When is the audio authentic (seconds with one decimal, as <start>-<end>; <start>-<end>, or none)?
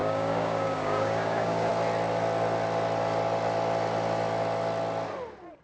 1.7-5.6